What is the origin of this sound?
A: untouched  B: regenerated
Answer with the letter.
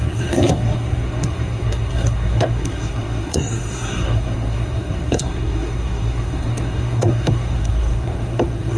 B